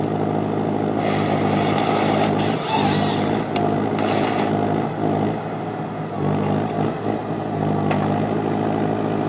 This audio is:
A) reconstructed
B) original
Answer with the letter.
B